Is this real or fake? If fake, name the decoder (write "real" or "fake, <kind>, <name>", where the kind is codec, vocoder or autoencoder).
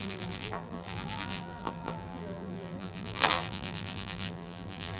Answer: fake, vocoder, BigVGAN v2